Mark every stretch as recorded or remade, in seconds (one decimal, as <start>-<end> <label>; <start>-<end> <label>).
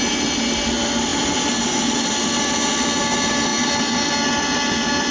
0.0-5.1 recorded